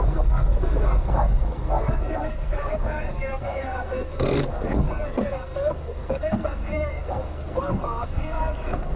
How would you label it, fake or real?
fake